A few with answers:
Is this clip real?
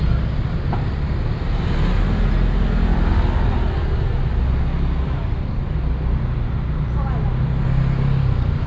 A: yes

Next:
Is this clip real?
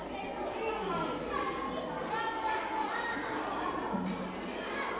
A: yes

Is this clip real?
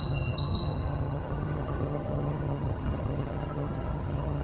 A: no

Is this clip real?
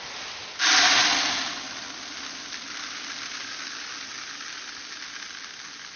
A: yes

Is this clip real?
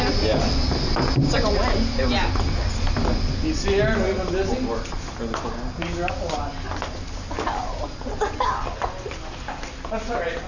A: yes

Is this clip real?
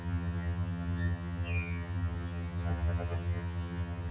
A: no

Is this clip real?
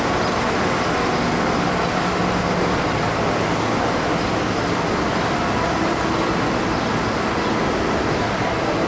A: yes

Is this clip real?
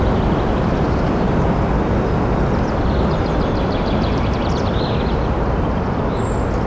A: yes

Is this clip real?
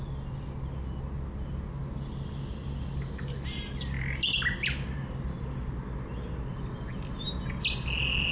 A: yes